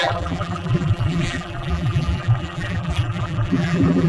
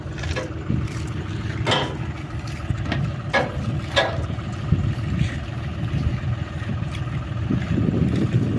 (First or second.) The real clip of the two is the second